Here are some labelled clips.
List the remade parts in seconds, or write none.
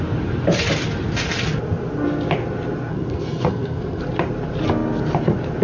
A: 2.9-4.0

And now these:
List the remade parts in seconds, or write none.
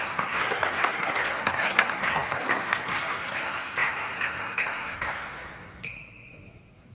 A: 0.0-6.9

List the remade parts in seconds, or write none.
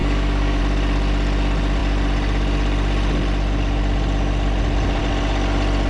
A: 0.0-0.6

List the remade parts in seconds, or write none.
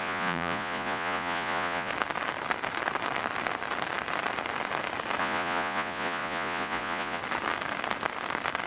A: 0.0-1.9; 5.2-7.2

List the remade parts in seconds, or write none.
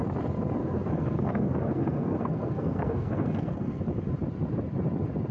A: 0.6-3.8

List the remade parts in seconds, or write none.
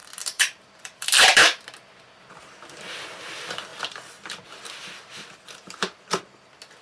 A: 0.0-2.3; 3.7-6.2